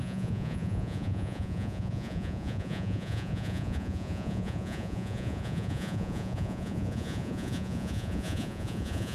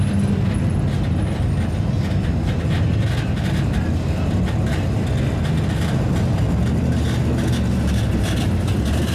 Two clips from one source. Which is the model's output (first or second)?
first